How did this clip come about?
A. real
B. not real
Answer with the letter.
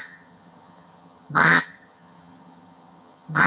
B